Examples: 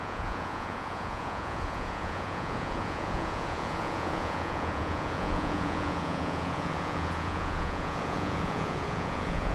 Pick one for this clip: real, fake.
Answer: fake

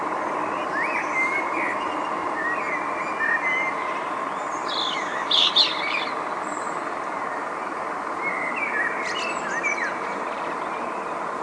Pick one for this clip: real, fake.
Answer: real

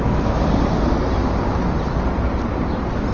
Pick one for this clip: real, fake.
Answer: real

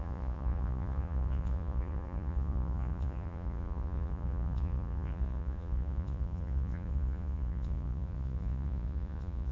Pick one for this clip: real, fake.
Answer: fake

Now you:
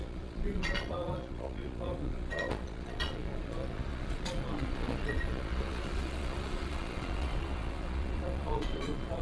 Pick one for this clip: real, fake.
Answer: fake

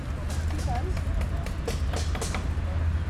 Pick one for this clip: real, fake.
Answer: real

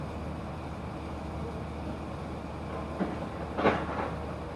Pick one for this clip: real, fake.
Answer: real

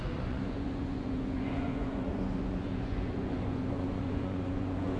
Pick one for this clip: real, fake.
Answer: fake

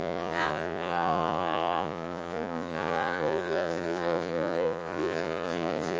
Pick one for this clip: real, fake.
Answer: fake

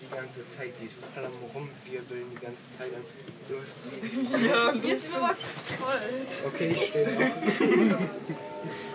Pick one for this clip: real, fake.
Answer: real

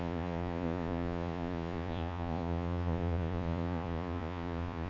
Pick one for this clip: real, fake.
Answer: fake